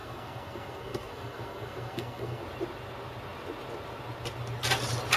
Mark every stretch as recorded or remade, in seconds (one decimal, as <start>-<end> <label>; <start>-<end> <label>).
0.0-2.4 remade; 2.4-5.2 recorded